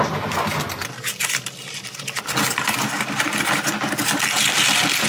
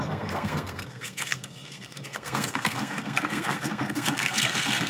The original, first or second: first